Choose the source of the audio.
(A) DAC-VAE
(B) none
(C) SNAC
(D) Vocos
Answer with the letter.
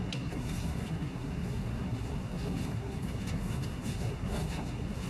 C